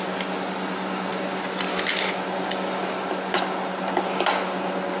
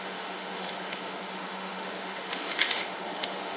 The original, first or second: first